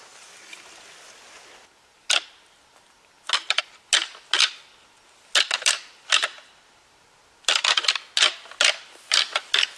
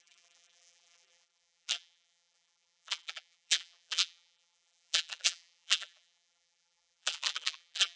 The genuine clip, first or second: first